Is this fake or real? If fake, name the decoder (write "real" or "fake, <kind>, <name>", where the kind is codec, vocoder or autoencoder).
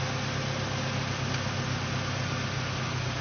real